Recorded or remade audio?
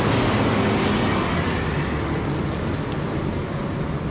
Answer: recorded